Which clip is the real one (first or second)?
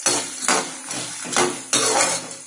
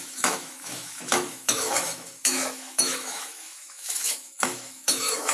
first